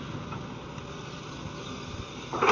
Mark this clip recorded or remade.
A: recorded